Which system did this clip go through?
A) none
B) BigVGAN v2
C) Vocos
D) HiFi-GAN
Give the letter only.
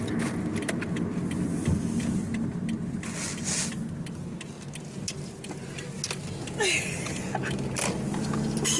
A